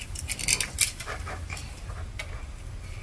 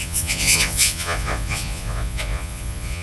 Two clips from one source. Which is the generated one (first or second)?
second